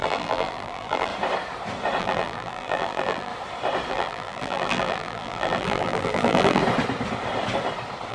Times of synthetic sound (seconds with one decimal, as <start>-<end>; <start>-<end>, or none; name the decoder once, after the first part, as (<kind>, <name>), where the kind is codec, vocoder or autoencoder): 0.0-1.1 (vocoder, BigVGAN v2); 2.0-3.3; 3.9-6.6